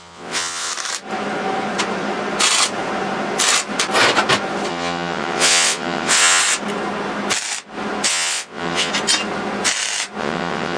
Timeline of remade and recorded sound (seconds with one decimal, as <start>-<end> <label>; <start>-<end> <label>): 0.0-0.7 remade; 0.7-4.7 recorded; 4.7-6.4 remade; 6.4-8.1 recorded; 8.1-8.9 remade; 8.9-10.2 recorded; 10.2-10.8 remade